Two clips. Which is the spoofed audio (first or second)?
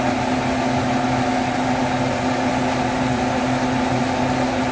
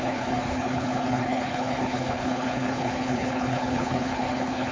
second